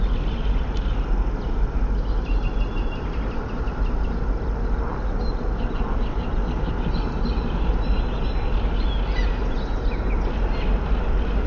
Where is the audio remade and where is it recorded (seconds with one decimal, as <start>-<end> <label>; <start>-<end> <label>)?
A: 0.0-11.5 recorded